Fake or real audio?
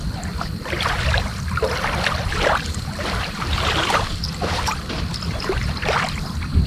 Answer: fake